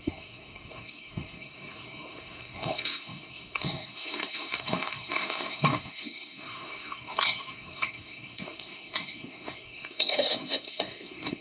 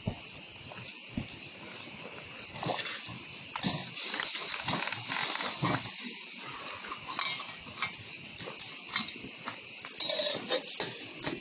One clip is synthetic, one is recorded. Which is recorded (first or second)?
second